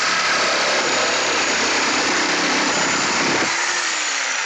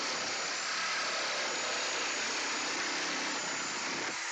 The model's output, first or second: first